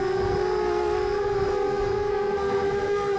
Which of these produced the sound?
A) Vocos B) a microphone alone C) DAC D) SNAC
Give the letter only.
D